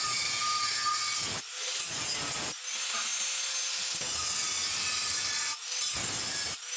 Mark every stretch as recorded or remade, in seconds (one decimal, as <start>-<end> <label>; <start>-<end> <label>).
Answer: 0.0-6.8 recorded